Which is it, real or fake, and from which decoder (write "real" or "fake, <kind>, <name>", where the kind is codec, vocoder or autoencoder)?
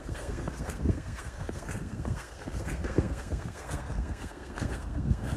fake, codec, SNAC